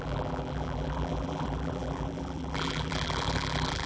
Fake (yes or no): yes